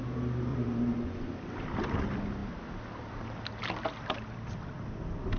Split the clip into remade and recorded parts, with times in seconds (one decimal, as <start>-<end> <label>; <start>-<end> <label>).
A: 0.0-0.5 recorded; 0.5-1.3 remade; 1.3-5.4 recorded